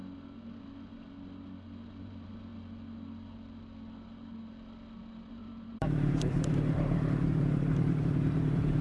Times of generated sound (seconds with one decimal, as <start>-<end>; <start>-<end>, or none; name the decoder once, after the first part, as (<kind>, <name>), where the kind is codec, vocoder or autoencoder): 2.0-2.5 (vocoder, BigVGAN v2); 5.3-8.8